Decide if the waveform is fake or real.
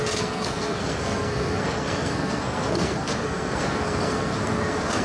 fake